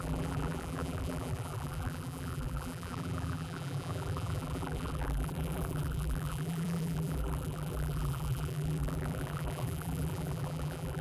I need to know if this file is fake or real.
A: fake